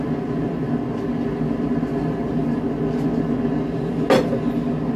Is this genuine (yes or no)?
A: yes